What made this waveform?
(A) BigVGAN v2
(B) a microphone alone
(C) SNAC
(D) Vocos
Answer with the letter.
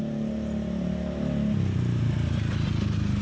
B